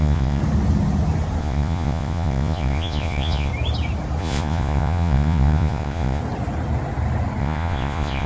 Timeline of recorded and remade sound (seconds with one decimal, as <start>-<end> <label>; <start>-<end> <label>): 0.0-0.4 remade; 0.4-1.4 recorded; 1.4-3.5 remade; 3.5-4.2 recorded; 4.2-6.2 remade; 6.2-7.4 recorded; 7.4-8.3 remade